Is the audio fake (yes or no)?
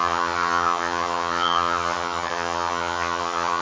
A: yes